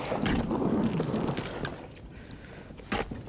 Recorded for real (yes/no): yes